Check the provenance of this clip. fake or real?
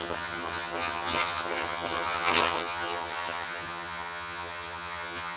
fake